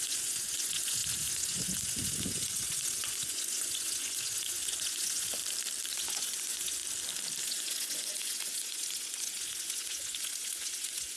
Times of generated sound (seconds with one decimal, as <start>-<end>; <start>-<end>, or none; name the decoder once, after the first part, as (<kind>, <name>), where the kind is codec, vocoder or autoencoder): 0.0-5.4 (vocoder, Vocos); 5.9-6.8; 7.4-11.2